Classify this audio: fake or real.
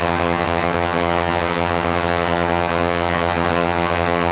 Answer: fake